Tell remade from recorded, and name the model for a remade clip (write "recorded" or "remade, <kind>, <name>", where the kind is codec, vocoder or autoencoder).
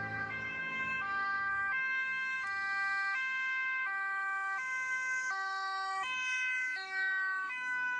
remade, autoencoder, DAC-VAE